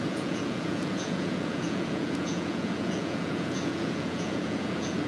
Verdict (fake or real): fake